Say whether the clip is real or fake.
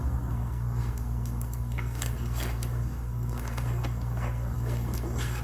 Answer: fake